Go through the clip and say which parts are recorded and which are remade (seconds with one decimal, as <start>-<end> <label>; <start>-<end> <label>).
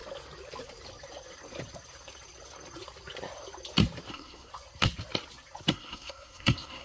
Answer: 0.0-4.1 recorded; 4.1-4.5 remade; 4.5-5.7 recorded; 5.7-6.8 remade